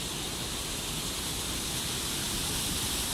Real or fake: real